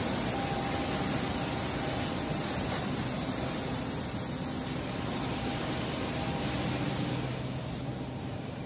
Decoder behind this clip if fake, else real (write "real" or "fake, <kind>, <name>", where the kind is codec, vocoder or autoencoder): real